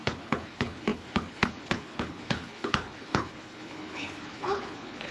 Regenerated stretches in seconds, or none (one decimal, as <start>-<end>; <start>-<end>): 0.0-5.1